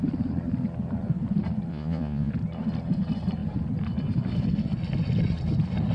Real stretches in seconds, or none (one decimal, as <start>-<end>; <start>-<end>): 0.0-1.7; 2.3-5.9